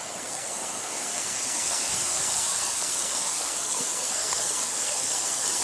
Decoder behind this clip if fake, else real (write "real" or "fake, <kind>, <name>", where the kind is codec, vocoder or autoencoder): fake, codec, SNAC